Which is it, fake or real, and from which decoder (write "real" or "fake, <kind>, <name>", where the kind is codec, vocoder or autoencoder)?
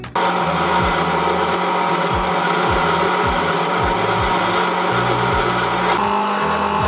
real